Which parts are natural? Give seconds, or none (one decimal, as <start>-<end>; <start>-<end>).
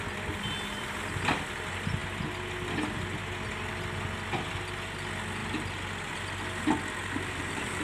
0.0-7.0